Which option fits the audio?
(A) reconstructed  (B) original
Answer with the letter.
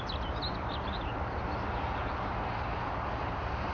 B